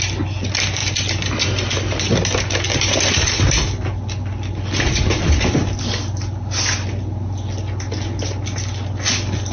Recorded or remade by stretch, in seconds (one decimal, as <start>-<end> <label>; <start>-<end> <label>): 0.0-9.5 recorded